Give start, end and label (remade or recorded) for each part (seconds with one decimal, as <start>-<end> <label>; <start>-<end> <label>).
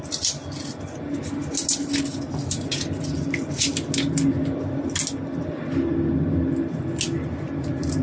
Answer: 0.0-8.0 recorded